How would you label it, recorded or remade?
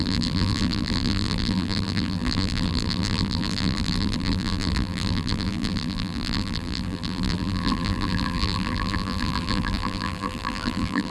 remade